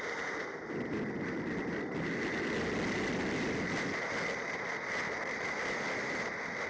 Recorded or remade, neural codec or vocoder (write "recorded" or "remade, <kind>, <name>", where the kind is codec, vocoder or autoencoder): recorded